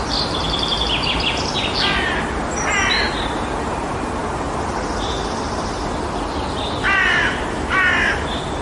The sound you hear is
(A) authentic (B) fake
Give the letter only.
A